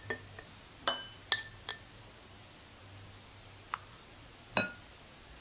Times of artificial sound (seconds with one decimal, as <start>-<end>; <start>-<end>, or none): none

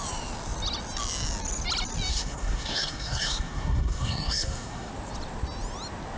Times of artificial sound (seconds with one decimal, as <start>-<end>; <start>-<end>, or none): 2.1-4.9

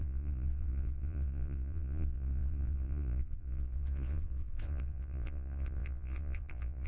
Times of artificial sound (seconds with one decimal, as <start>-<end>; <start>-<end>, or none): 0.0-6.9

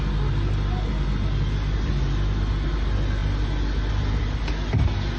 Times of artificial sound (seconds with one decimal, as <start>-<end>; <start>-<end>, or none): none

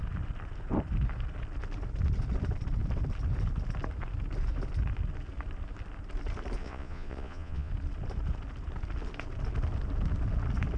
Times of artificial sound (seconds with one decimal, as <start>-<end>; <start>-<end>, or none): 6.6-7.7